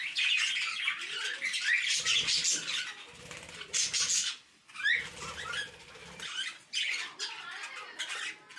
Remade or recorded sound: recorded